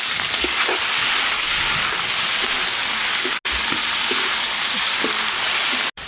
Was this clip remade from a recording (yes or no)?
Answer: no